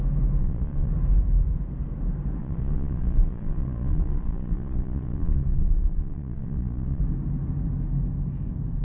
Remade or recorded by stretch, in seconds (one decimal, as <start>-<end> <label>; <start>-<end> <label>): 0.0-0.4 recorded; 0.4-0.9 remade; 0.9-2.4 recorded; 2.4-7.0 remade; 7.0-8.8 recorded